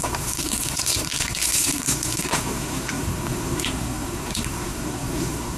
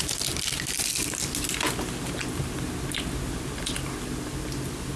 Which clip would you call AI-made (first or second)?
first